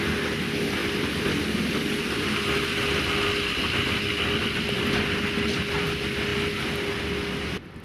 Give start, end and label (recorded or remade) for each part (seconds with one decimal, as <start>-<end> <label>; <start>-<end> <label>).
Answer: 0.0-0.8 recorded; 0.8-1.4 remade; 1.4-7.8 recorded